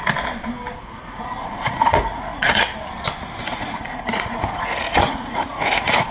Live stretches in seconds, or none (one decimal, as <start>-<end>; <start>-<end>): 0.0-0.8; 2.7-3.4